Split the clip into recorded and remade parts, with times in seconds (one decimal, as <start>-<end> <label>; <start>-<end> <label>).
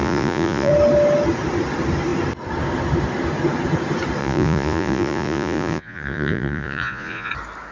0.0-0.7 remade; 0.7-4.2 recorded; 4.2-7.3 remade; 7.3-7.7 recorded